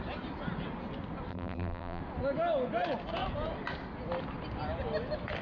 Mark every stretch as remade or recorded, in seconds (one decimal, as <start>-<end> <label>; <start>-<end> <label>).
0.0-1.3 recorded; 1.3-2.0 remade; 2.0-5.4 recorded